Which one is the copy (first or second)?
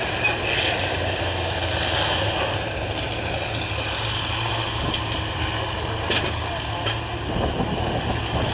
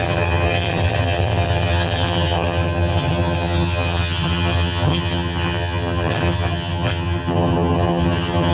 second